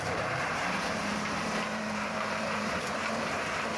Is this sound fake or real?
fake